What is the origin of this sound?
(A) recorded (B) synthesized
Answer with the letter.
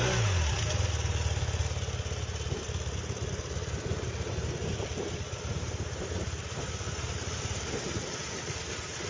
A